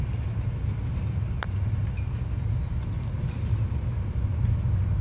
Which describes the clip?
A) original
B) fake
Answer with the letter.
A